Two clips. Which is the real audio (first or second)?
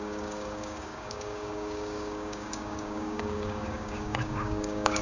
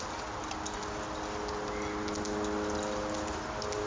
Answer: second